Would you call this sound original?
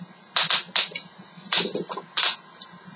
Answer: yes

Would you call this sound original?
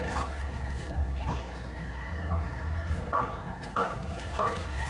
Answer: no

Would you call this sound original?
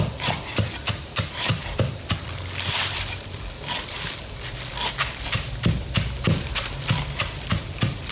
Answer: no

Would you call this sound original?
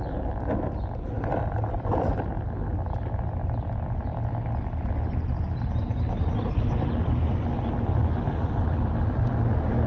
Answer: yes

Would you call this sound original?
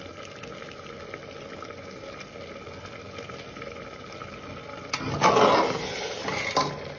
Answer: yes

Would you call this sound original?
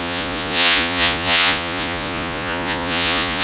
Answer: no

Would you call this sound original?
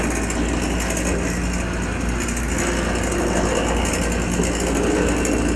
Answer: yes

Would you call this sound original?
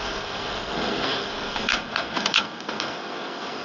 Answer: no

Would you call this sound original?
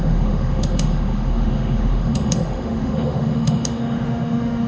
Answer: no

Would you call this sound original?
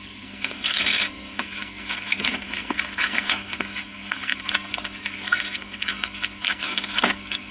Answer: no